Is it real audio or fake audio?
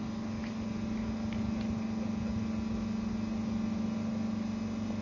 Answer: real